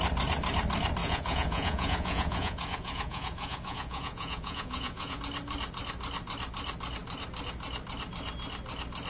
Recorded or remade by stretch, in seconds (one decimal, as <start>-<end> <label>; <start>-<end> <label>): 0.0-1.0 recorded; 1.0-5.2 remade; 5.2-9.1 recorded